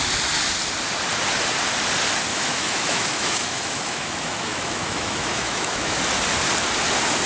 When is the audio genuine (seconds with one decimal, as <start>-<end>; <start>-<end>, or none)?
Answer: 0.0-2.3; 6.0-7.3